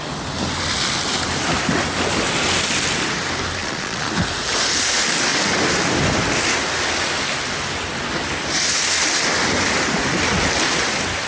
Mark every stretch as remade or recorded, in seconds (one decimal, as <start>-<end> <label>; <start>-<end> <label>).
0.0-3.6 recorded; 3.6-4.1 remade; 4.1-11.3 recorded